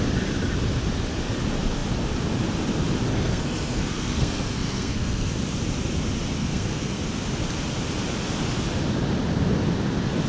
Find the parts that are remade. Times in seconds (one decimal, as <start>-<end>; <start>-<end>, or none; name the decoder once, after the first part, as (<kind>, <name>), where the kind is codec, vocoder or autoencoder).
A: 3.1-5.3 (codec, SNAC); 6.4-7.0